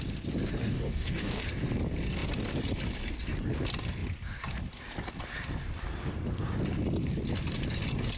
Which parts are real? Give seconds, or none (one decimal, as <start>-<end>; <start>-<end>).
0.0-0.6; 1.4-8.2